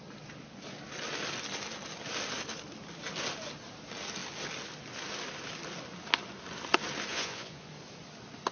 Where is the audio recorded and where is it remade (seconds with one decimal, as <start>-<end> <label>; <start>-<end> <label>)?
0.0-7.1 recorded; 7.1-7.7 remade; 7.7-8.5 recorded